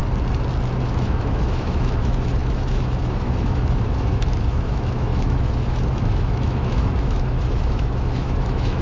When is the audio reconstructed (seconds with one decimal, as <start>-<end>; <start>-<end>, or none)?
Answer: 0.8-8.8

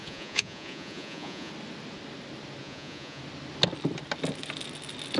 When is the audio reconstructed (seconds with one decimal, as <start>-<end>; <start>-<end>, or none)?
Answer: 0.0-1.5; 2.6-3.2

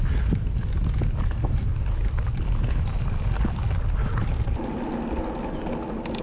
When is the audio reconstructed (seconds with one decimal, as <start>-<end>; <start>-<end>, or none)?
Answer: none

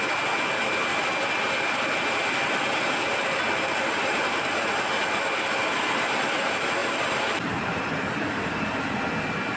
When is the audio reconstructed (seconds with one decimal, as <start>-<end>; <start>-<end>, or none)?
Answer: 0.9-5.7; 6.8-8.4

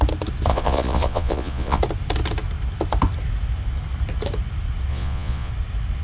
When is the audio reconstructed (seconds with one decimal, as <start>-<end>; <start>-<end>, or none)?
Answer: 0.5-1.8; 4.9-5.5

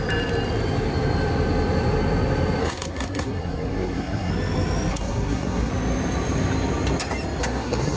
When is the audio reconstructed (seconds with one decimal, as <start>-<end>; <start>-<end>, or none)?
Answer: 2.6-4.3; 4.9-5.7; 7.4-8.0